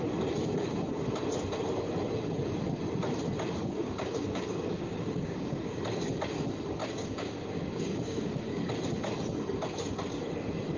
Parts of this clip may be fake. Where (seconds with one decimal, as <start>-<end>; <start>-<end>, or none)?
3.6-5.8; 6.8-8.7